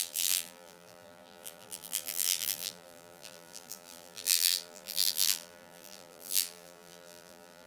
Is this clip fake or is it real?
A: fake